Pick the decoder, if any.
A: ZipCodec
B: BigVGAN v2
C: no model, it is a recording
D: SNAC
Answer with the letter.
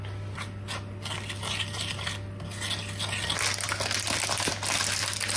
C